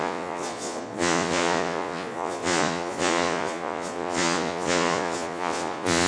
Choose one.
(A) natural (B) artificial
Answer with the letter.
B